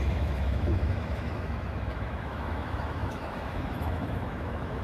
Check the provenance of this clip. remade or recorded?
remade